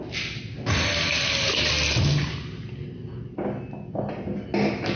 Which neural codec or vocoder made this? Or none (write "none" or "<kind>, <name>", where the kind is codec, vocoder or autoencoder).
none